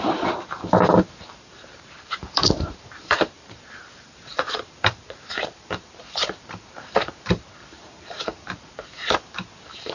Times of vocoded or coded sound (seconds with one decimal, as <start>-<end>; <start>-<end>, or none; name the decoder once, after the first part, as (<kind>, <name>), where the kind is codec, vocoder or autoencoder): 0.0-9.9 (vocoder, BigVGAN v2)